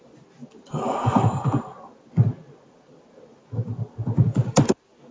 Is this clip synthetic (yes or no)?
yes